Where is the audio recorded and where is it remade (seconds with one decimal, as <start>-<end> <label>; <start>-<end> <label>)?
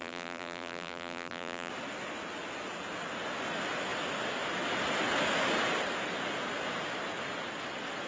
0.0-1.7 remade; 1.7-8.1 recorded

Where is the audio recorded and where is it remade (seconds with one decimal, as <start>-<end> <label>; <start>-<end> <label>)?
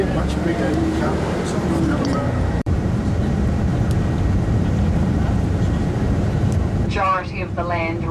0.0-3.7 remade; 3.7-4.6 recorded; 4.6-8.1 remade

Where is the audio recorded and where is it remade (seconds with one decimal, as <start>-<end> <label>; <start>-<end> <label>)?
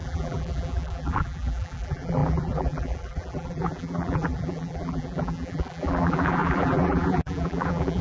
0.0-8.0 remade